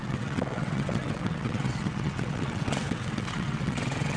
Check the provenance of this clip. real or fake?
fake